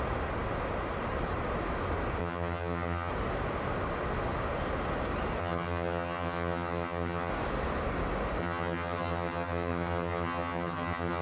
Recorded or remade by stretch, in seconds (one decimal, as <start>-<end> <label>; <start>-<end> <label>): 0.0-2.2 recorded; 2.2-3.1 remade; 3.1-5.4 recorded; 5.4-7.3 remade; 7.3-8.4 recorded; 8.4-11.2 remade